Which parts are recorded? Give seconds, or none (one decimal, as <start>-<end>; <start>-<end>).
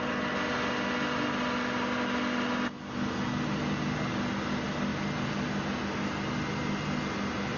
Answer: 0.0-7.6